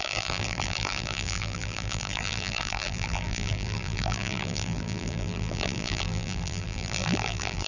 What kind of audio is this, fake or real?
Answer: fake